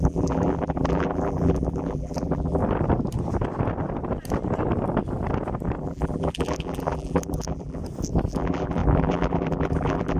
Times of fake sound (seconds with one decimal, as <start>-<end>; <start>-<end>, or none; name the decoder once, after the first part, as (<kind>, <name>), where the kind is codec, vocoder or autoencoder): 0.0-2.6 (vocoder, BigVGAN v2); 5.8-7.8; 8.3-10.2